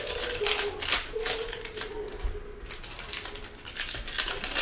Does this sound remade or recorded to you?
recorded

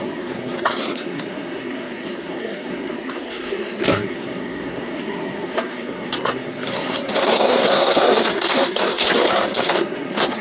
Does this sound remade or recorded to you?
remade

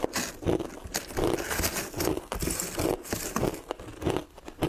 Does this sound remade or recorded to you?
recorded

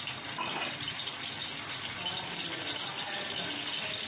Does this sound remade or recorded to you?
recorded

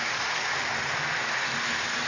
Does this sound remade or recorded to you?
recorded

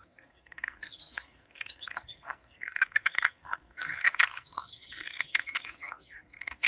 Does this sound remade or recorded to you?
remade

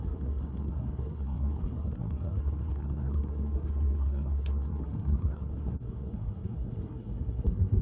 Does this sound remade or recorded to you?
remade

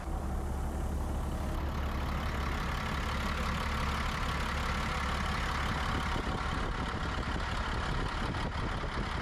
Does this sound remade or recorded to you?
recorded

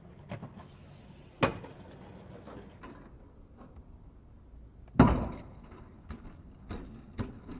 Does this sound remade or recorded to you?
recorded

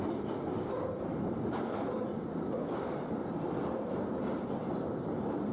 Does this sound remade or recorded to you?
recorded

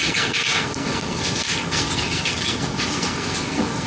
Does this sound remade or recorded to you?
remade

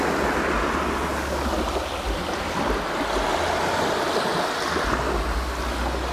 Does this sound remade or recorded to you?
recorded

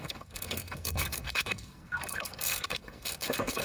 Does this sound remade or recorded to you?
remade